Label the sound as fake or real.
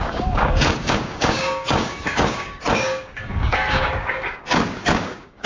fake